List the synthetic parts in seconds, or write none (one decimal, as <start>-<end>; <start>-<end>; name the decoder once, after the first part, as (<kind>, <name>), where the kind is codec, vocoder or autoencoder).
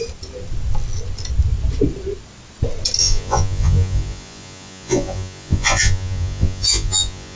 3.0-7.4 (vocoder, Vocos)